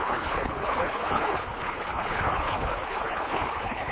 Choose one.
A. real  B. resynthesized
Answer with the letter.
B